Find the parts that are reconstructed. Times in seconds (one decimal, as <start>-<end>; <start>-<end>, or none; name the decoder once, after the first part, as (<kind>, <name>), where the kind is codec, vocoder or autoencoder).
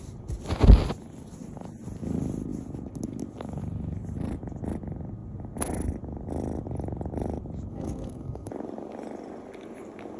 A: 7.7-8.5 (codec, SNAC)